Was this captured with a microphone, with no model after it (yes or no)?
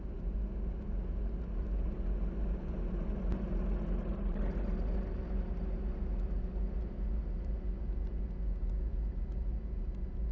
yes